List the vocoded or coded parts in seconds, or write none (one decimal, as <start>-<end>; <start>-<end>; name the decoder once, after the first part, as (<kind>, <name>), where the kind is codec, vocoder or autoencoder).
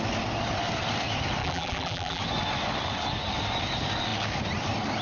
1.4-2.2 (vocoder, BigVGAN v2)